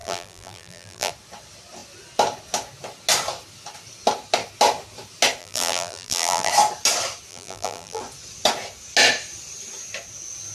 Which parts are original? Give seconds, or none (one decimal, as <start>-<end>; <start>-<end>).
1.1-5.4; 6.5-7.3; 8.0-10.5